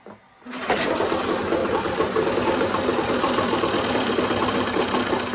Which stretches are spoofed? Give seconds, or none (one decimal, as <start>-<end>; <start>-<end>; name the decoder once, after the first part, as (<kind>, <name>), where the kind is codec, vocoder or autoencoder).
1.6-4.8 (vocoder, BigVGAN v2)